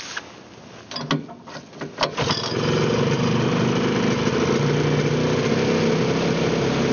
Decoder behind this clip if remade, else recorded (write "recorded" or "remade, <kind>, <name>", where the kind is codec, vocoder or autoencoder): recorded